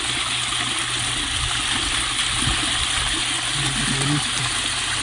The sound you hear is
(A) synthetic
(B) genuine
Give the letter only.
B